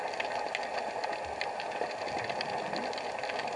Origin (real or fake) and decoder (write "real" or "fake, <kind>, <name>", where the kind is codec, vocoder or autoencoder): real